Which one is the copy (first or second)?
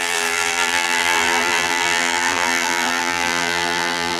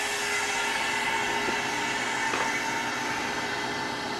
first